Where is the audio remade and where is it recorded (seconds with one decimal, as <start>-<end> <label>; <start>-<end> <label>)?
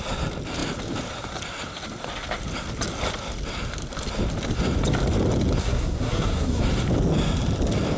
0.0-5.6 recorded; 5.6-6.6 remade; 6.6-8.0 recorded